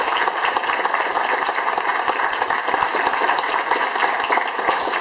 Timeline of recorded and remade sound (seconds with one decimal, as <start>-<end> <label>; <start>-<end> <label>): 0.0-5.0 recorded